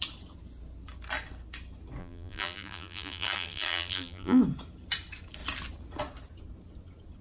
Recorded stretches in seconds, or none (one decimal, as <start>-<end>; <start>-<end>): 0.0-2.0; 4.4-7.2